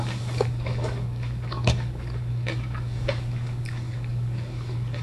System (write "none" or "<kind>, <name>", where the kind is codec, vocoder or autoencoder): codec, DAC